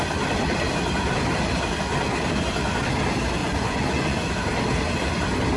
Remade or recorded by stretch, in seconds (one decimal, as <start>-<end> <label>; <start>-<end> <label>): 0.0-3.4 recorded; 3.4-4.3 remade; 4.3-5.6 recorded